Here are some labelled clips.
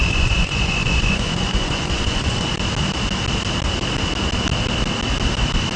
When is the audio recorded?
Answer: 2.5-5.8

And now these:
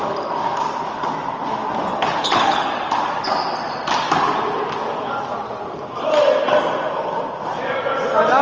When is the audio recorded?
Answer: 0.0-1.9; 2.7-8.4

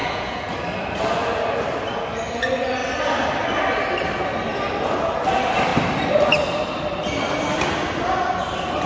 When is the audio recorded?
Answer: 0.5-8.9

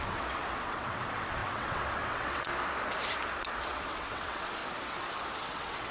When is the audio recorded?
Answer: 2.5-3.4; 4.6-5.4